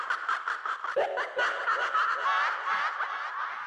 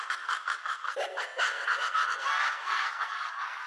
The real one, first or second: first